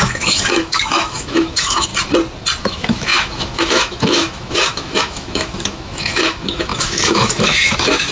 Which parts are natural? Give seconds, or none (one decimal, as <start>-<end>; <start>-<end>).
1.9-2.6